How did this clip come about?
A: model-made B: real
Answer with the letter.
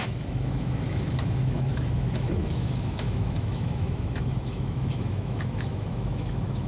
A